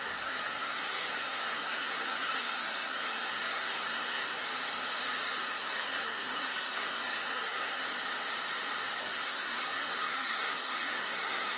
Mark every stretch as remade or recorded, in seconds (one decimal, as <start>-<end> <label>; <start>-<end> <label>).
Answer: 0.0-4.4 remade; 4.4-5.4 recorded; 5.4-7.8 remade; 7.8-9.0 recorded; 9.0-11.6 remade